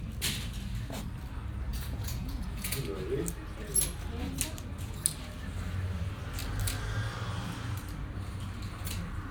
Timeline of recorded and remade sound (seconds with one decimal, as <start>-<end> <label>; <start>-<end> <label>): 0.0-1.7 recorded; 1.7-2.8 remade; 2.8-9.3 recorded